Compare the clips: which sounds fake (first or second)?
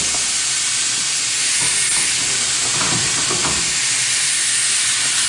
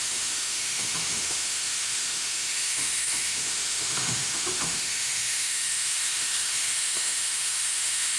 second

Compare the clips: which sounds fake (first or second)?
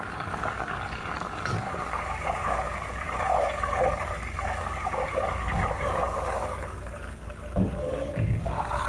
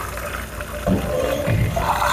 first